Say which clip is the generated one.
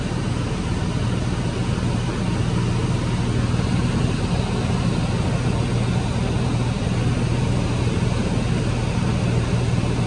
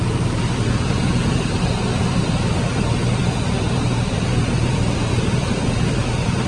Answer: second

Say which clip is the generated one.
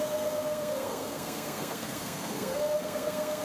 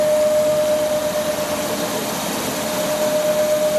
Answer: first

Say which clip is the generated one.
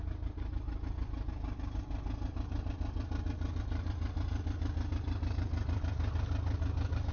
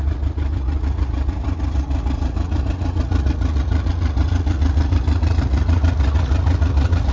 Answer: second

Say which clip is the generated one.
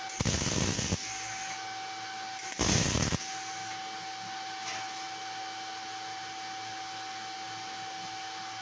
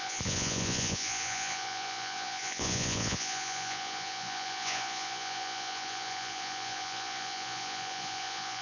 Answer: second